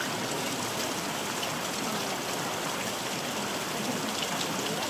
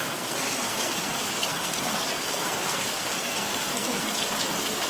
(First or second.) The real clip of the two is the first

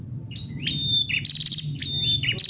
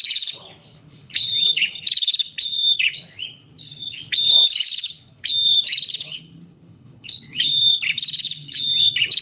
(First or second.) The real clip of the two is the first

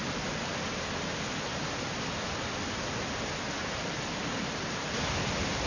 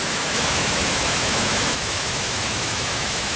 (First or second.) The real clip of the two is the first